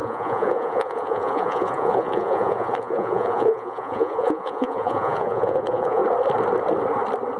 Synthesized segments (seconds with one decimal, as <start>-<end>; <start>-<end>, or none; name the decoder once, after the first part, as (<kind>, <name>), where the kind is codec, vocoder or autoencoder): 0.0-6.0 (vocoder, Vocos)